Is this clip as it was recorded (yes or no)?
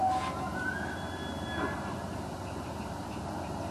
no